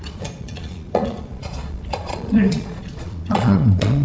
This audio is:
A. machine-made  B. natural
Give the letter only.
A